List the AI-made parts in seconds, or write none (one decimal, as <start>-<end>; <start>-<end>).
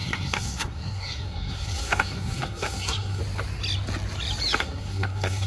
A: 0.0-3.2; 4.6-5.5